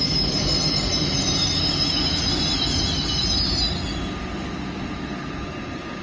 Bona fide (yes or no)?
yes